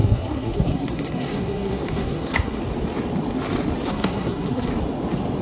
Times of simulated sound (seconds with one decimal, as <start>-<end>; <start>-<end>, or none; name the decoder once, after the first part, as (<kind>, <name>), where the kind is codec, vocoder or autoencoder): 0.0-2.6 (codec, SNAC); 3.9-4.7

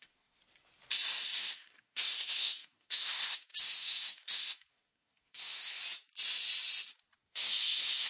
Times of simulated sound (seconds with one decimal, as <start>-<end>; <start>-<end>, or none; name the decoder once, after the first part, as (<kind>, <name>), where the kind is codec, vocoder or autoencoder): 0.0-0.4 (codec, SNAC); 1.4-5.8; 7.3-8.1

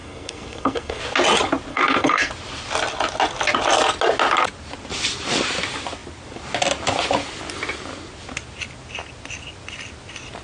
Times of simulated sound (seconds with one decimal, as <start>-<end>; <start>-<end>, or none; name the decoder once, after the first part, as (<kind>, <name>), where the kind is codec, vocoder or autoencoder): 0.0-1.0 (codec, SNAC); 1.7-2.3